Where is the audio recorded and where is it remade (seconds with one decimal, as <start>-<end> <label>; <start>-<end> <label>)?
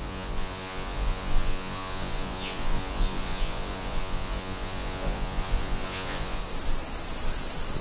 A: 0.0-6.4 remade; 6.4-7.8 recorded